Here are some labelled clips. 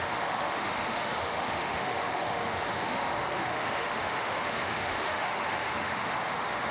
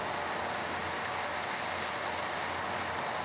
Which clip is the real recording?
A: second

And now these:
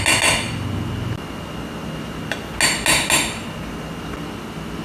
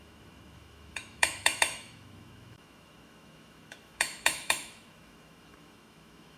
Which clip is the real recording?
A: first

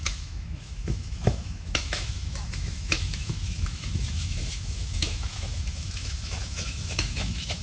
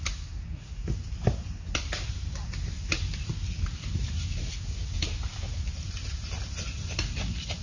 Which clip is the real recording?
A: second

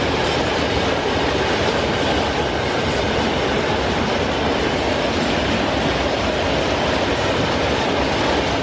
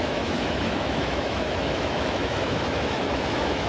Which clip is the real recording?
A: first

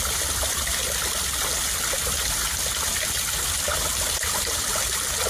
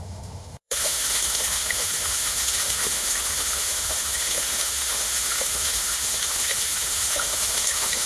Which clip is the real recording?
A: first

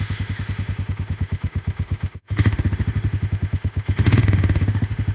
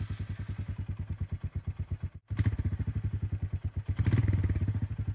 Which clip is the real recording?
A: second